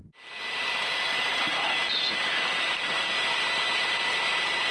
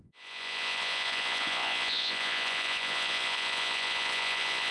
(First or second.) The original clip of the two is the first